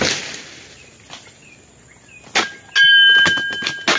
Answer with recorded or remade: recorded